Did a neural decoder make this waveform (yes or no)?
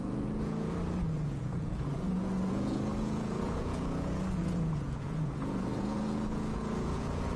yes